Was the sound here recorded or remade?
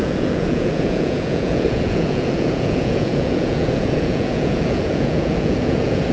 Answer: remade